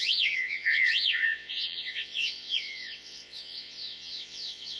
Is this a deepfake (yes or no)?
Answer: yes